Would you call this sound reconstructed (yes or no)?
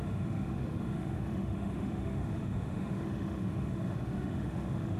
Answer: yes